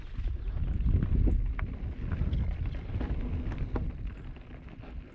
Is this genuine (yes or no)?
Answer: yes